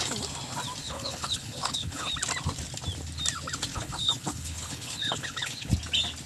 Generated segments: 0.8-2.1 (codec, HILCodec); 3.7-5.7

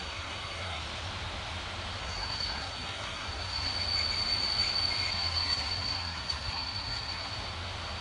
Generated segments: 0.0-0.8 (codec, SNAC); 2.0-3.7; 5.1-7.3

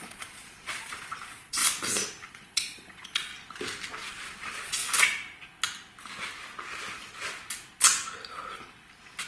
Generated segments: 0.0-1.6 (vocoder, Vocos); 2.3-3.3; 4.1-4.8

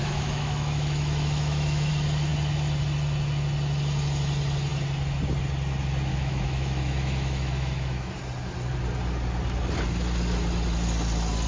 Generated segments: 0.0-1.9 (autoencoder, DAC-VAE); 6.1-8.1

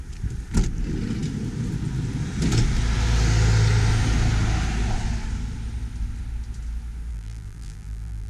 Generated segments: 7.1-8.3 (vocoder, BigVGAN v2)

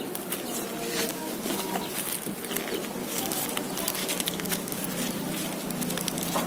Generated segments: 1.1-1.9 (codec, DAC); 3.0-3.5; 4.0-4.9